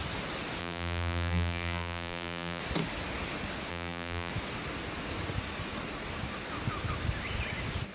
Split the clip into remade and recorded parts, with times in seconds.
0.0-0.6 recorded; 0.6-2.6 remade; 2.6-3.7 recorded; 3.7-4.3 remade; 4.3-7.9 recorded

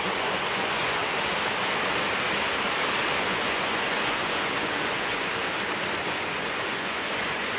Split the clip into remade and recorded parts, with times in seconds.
0.0-1.0 remade; 1.0-3.2 recorded; 3.2-5.3 remade; 5.3-6.0 recorded; 6.0-7.6 remade

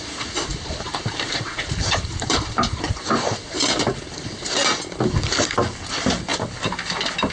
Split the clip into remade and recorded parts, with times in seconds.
0.0-0.5 recorded; 0.5-4.6 remade; 4.6-7.3 recorded